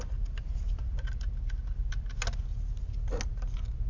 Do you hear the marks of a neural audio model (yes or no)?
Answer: no